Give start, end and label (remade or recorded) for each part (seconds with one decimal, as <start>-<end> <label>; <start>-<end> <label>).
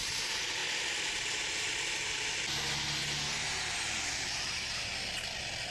0.0-0.6 remade; 0.6-4.0 recorded; 4.0-5.0 remade; 5.0-5.7 recorded